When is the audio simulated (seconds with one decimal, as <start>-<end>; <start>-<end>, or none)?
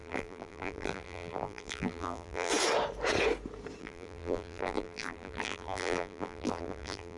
0.0-2.5; 3.8-7.2